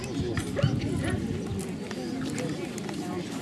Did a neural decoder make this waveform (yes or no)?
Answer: no